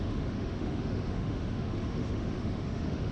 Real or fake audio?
fake